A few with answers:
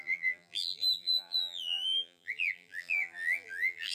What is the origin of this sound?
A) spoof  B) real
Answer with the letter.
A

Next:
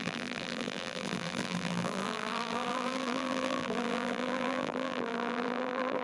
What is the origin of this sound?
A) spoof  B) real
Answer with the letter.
A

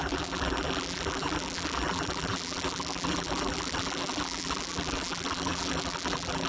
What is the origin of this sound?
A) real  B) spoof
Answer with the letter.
B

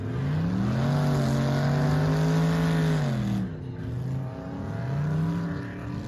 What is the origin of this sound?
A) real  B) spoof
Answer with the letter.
A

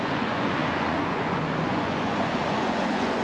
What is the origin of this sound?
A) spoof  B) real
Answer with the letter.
A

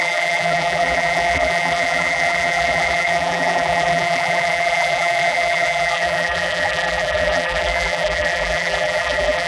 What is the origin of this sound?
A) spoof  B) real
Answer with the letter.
A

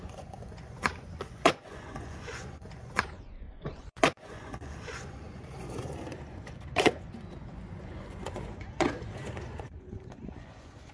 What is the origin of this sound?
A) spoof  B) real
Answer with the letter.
A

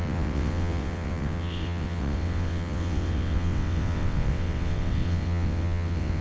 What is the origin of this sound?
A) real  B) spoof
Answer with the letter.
B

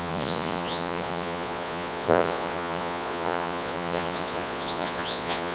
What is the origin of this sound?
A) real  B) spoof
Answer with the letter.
B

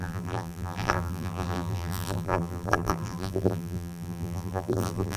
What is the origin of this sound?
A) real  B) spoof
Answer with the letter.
B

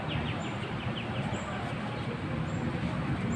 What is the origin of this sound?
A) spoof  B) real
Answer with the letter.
B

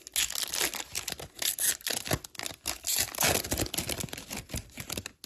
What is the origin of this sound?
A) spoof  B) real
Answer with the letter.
B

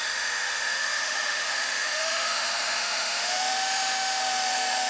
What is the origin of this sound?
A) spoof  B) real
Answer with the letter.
A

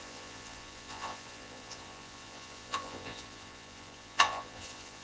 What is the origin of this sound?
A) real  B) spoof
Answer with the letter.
B